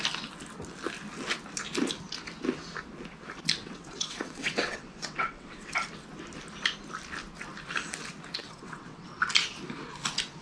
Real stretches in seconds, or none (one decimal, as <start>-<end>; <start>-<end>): 0.0-3.6; 5.7-8.4; 9.2-10.4